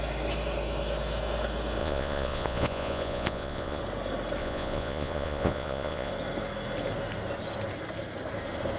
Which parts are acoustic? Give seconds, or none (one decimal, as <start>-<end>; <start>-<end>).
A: 0.0-1.8; 3.8-4.4; 6.1-8.8